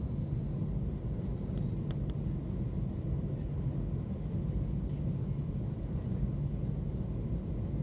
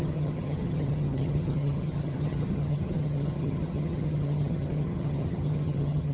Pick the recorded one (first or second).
first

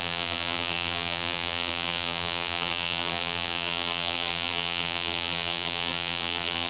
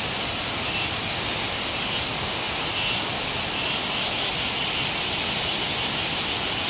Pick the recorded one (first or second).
second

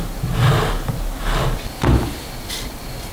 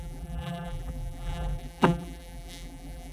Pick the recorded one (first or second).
first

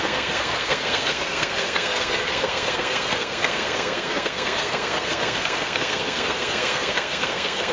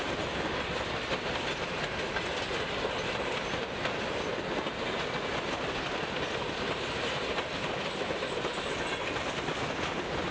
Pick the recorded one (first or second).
second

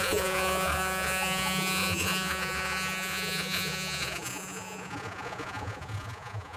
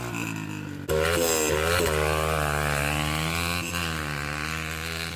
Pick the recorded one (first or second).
second